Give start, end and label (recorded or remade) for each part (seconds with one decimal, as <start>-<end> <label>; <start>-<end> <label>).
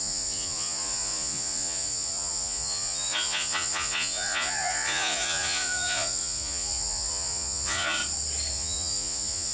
0.0-8.0 remade; 8.0-8.5 recorded; 8.5-9.5 remade